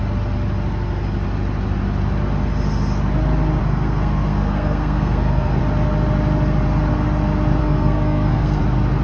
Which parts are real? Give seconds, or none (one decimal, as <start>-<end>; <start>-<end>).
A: 0.0-3.6; 5.6-7.6; 8.6-9.0